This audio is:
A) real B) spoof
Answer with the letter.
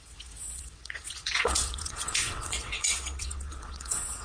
B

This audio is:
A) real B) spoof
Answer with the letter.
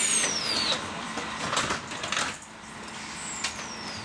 A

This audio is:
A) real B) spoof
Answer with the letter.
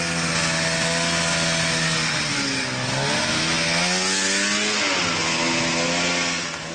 A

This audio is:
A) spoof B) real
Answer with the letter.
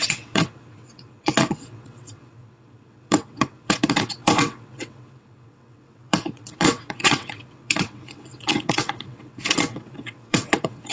A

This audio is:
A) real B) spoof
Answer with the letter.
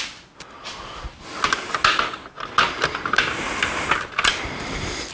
A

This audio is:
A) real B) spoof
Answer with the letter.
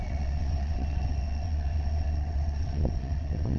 B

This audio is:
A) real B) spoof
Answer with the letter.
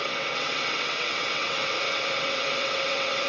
B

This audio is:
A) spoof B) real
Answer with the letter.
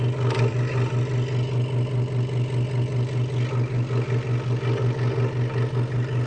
B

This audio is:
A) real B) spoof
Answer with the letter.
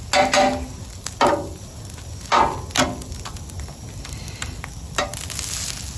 A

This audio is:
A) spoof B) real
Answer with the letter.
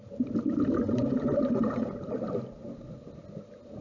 B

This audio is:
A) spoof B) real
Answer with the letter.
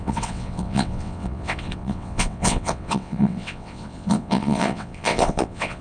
A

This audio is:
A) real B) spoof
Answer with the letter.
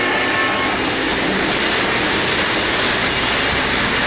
A